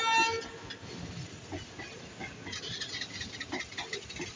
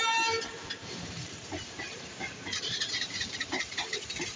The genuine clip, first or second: first